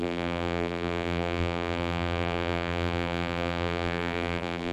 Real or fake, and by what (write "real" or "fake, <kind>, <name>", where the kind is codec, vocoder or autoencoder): fake, vocoder, BigVGAN v2